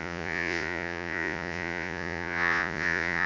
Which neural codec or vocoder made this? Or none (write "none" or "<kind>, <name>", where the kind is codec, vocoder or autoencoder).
vocoder, Vocos